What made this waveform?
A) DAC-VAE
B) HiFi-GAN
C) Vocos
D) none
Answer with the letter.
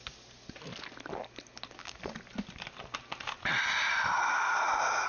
D